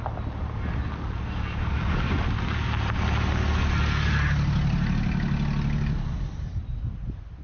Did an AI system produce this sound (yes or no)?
no